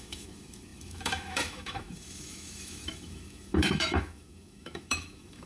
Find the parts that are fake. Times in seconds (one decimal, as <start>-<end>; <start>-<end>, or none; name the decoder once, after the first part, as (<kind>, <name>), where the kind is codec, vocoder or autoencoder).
0.0-5.5 (autoencoder, DAC-VAE)